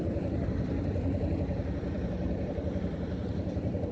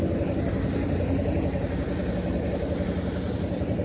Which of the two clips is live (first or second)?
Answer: second